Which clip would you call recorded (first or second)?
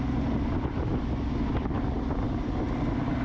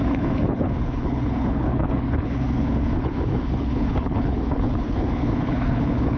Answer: first